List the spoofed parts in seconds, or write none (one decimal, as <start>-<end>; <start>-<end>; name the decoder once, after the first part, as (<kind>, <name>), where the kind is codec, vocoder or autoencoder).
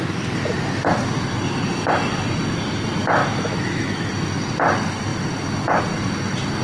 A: 3.2-4.1 (autoencoder, DAC-VAE)